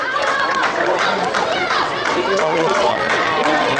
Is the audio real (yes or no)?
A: no